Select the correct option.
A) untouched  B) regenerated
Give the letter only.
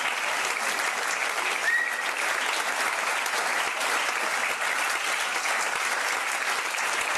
A